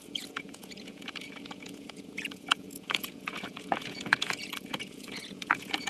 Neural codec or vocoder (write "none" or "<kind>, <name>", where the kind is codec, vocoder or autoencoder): vocoder, Vocos